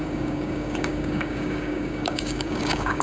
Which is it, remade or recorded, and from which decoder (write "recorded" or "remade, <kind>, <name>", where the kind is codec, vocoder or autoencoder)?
remade, codec, DAC